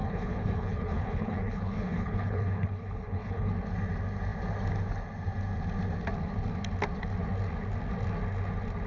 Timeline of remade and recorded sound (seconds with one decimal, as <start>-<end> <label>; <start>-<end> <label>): 0.0-3.5 remade; 3.5-8.9 recorded